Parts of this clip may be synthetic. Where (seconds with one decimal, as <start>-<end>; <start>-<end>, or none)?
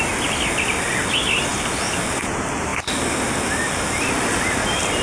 none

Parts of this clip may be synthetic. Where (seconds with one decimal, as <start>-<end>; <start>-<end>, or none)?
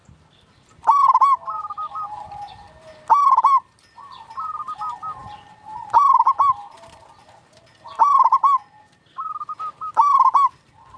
none